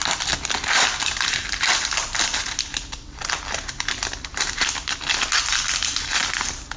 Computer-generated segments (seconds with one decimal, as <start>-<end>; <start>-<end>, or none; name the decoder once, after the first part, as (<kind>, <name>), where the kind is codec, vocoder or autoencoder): none